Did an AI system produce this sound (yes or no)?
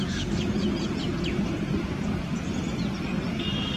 no